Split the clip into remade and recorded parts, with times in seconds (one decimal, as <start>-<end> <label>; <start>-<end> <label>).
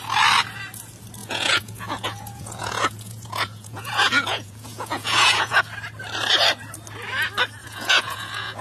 0.0-1.2 recorded; 1.2-5.6 remade; 5.6-7.6 recorded; 7.6-8.6 remade